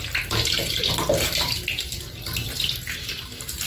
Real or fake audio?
real